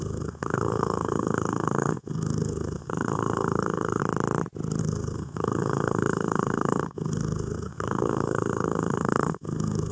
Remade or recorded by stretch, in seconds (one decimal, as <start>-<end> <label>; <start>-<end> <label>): 0.0-4.0 remade; 4.0-4.8 recorded; 4.8-9.9 remade